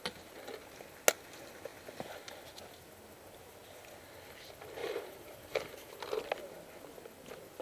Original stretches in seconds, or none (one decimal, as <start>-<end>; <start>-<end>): 0.0-4.8; 6.2-7.6